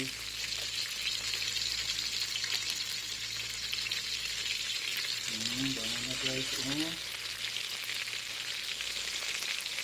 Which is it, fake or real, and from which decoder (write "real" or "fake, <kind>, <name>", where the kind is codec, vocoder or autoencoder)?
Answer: real